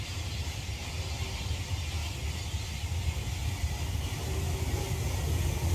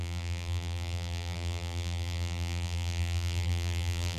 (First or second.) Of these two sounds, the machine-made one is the second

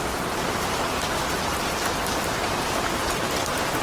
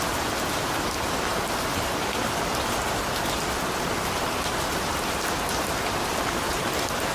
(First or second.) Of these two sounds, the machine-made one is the second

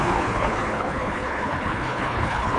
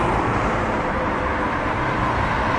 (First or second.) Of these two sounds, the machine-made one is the first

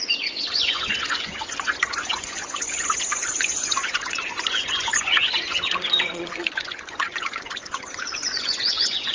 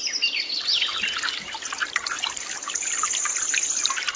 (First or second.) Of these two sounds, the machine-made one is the first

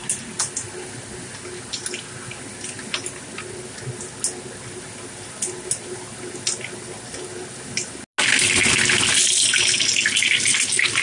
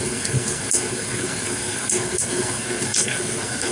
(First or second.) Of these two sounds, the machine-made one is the second